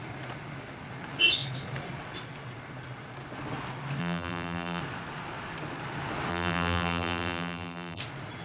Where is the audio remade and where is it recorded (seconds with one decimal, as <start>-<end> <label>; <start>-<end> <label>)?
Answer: 0.0-4.0 recorded; 4.0-4.8 remade; 4.8-6.3 recorded; 6.3-8.0 remade; 8.0-8.4 recorded